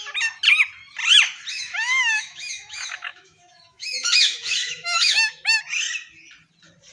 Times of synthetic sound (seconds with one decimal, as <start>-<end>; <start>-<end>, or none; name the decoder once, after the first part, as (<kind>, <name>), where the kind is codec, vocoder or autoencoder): 1.5-5.6 (autoencoder, DAC-VAE)